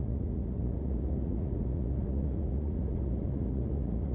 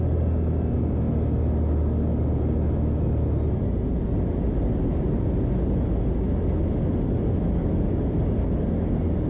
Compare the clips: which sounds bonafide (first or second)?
second